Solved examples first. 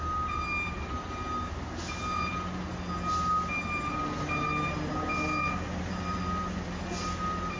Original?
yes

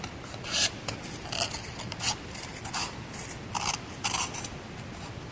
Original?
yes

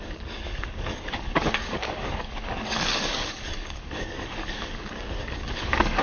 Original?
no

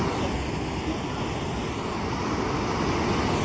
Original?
yes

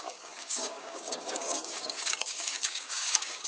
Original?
no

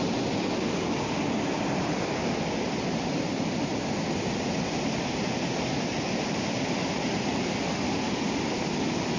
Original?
yes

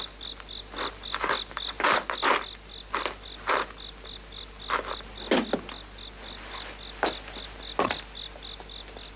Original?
yes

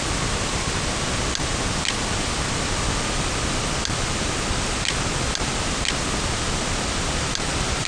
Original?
yes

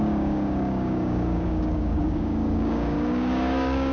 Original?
no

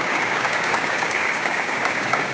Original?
no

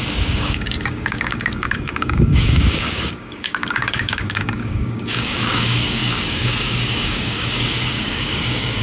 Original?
no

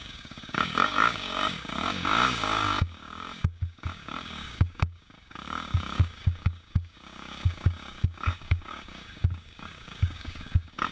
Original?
no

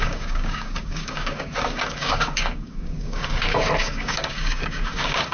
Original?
no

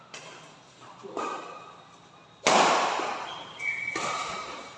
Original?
yes